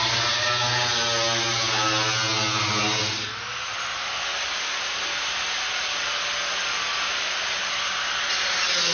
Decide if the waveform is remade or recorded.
recorded